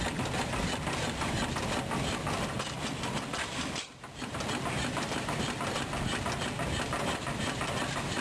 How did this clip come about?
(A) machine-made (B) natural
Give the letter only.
A